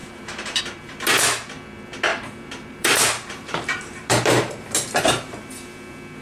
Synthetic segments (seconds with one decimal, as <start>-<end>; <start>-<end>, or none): 0.0-0.6; 2.1-5.5